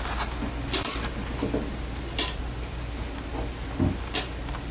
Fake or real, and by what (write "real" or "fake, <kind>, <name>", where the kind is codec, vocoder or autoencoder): real